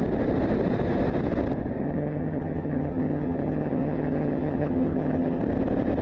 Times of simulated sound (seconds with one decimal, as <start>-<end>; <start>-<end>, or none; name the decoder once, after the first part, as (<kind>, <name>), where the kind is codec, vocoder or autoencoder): 1.8-5.4 (vocoder, HiFi-GAN)